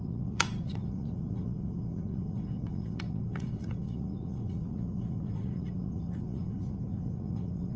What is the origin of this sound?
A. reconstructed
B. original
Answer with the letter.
A